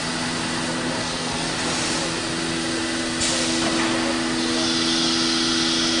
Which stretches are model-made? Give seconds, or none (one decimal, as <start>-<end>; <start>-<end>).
1.0-1.5